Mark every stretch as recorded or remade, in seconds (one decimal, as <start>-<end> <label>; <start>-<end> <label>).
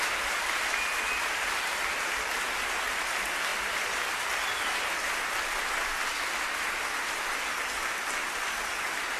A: 0.0-9.2 recorded